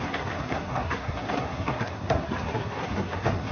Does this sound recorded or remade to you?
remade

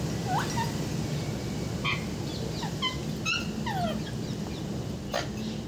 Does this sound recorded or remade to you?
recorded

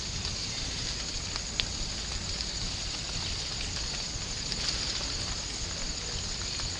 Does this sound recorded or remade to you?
recorded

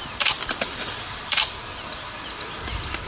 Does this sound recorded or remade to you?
recorded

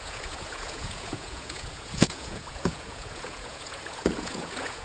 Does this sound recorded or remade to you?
remade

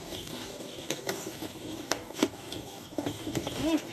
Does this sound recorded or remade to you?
remade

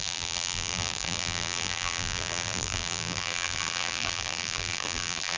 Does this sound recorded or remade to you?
remade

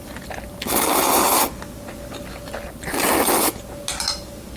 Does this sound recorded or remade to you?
recorded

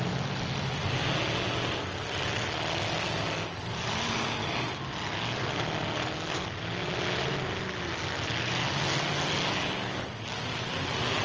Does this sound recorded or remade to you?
recorded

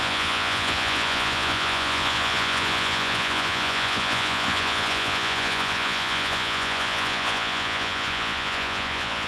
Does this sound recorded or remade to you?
remade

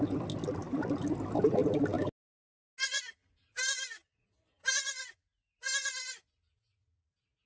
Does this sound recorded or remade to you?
recorded